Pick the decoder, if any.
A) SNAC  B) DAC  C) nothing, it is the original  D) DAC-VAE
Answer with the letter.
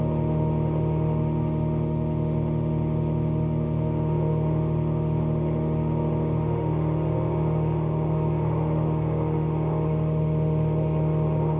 D